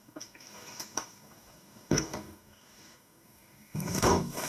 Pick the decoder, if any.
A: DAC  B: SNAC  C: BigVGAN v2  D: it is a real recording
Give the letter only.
A